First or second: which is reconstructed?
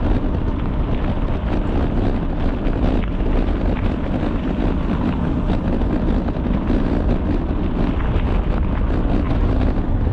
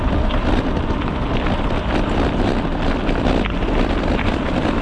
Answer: second